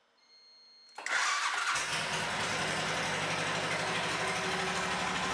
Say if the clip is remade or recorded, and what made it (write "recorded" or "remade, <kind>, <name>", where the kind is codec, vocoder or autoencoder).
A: recorded